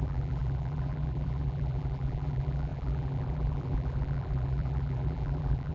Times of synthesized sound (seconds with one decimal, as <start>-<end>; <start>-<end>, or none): 0.0-5.7